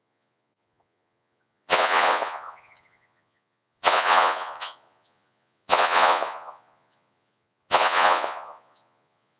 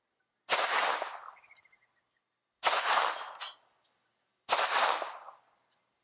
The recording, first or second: second